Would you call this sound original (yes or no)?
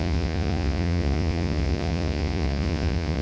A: no